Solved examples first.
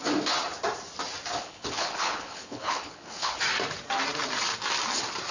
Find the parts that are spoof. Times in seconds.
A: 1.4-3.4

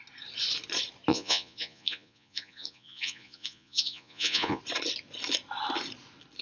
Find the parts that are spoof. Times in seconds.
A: 1.1-4.6

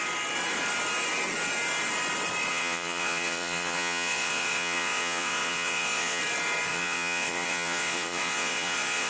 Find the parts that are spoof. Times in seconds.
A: 2.5-6.2; 6.7-9.1